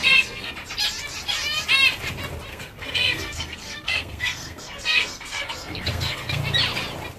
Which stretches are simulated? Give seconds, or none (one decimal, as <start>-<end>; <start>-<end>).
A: 0.0-0.5; 2.5-6.4